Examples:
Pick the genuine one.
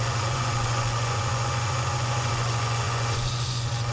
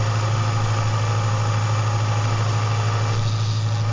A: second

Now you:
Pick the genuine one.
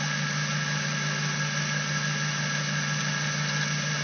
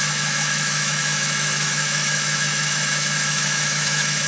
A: first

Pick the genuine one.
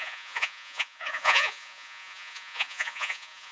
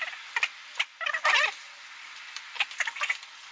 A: second